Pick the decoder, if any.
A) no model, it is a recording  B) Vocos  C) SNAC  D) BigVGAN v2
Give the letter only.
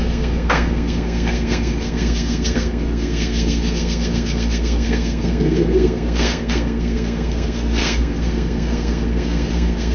C